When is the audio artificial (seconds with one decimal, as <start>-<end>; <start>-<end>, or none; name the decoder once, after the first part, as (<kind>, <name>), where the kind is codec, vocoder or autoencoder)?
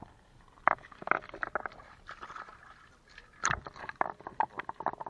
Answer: none